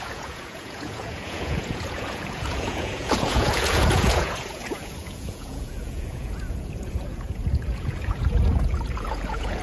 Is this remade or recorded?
remade